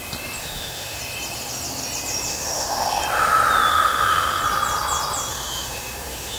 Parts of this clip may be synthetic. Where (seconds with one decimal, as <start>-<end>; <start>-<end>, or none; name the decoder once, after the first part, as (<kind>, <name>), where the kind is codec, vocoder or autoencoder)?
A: 0.4-1.0 (autoencoder, DAC-VAE); 2.3-3.0; 3.7-4.4; 5.3-6.4

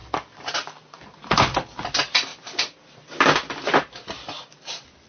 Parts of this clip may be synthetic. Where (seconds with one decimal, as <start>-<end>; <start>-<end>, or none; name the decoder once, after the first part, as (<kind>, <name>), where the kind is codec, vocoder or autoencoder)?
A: none

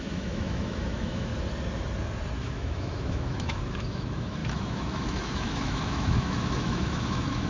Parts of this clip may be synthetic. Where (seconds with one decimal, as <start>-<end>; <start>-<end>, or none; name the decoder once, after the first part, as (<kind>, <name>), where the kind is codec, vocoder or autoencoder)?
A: 0.0-1.3 (autoencoder, DAC-VAE); 2.4-7.5

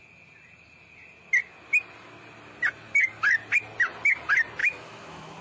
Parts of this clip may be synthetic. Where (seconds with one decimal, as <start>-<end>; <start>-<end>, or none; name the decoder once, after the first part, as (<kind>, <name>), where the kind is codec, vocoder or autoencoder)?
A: 4.6-5.4 (autoencoder, DAC-VAE)

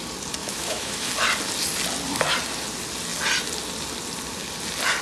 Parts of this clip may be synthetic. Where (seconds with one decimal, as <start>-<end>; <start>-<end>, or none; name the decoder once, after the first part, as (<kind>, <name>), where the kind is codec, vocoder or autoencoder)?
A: 0.4-1.1 (autoencoder, DAC-VAE)

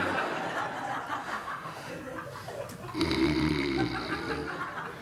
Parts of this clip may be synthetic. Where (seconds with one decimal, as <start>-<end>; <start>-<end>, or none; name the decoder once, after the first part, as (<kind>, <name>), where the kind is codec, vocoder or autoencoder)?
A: 1.2-1.9 (autoencoder, DAC-VAE)

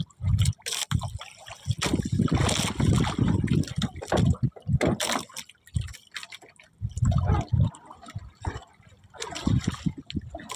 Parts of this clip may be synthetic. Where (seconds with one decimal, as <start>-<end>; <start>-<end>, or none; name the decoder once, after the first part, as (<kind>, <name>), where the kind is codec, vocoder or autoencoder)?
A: none